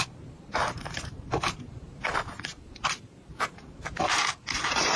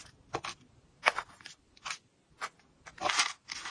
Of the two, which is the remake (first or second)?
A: first